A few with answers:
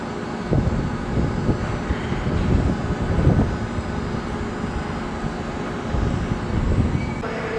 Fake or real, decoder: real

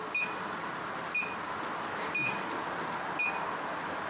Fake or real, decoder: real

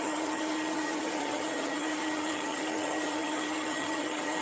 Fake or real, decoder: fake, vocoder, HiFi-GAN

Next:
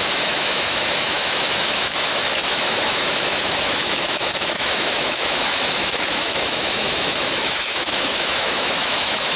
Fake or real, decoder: fake, autoencoder, DAC-VAE